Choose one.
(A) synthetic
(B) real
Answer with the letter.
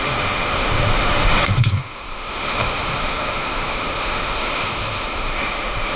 A